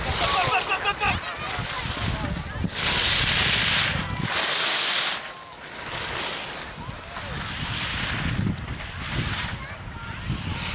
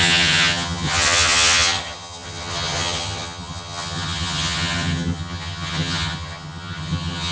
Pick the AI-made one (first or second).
second